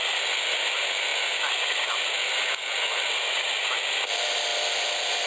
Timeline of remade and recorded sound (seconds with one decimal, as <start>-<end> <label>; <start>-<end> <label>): 0.0-5.3 recorded